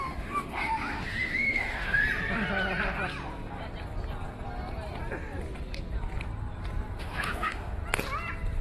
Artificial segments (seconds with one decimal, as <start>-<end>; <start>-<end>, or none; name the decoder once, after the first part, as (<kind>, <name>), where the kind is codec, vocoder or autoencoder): 0.0-2.0 (autoencoder, DAC-VAE); 7.0-7.8